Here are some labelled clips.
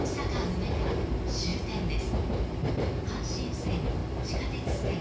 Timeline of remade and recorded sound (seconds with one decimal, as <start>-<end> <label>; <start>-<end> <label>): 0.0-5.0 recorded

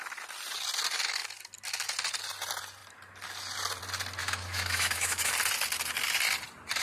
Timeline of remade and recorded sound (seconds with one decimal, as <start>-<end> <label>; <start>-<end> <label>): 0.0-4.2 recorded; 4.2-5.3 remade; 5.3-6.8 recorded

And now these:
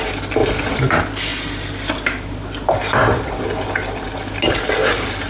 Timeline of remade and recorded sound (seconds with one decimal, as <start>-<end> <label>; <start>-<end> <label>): 0.0-5.3 recorded